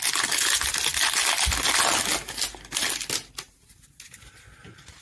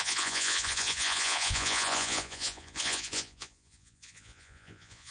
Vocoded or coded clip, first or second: second